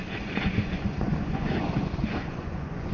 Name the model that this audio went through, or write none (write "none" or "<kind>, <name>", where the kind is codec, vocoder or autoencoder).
vocoder, Vocos